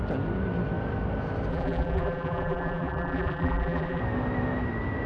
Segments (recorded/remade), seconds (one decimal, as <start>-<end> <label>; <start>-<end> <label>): 0.0-1.5 recorded; 1.5-4.0 remade; 4.0-5.1 recorded

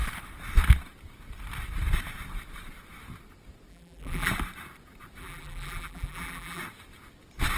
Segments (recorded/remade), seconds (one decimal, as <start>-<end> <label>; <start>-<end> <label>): 0.0-3.7 recorded; 3.7-4.3 remade; 4.3-5.2 recorded; 5.2-6.6 remade; 6.6-7.6 recorded

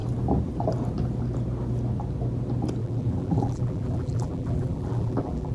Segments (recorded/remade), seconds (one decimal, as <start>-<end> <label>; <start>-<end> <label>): 0.0-2.8 recorded; 2.8-5.5 remade

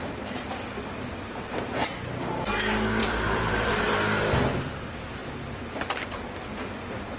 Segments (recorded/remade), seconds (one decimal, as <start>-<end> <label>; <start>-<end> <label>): 0.0-3.0 recorded; 3.0-3.7 remade; 3.7-7.2 recorded

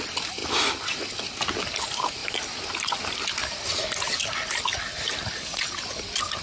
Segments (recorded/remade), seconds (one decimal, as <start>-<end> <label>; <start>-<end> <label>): 0.0-2.2 recorded; 2.2-5.1 remade; 5.1-6.4 recorded

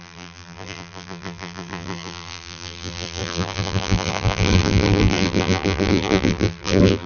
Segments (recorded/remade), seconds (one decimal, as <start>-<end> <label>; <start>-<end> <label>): 0.0-7.1 remade